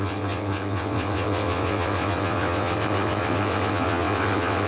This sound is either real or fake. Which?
fake